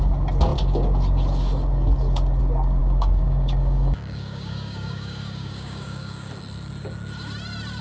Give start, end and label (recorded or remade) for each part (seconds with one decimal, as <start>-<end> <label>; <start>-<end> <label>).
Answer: 0.0-2.8 recorded; 2.8-6.3 remade; 6.3-7.8 recorded